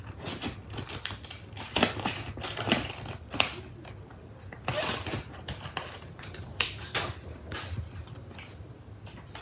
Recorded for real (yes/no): yes